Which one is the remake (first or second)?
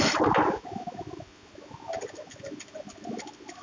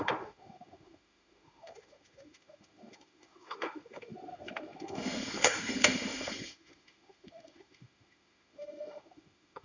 second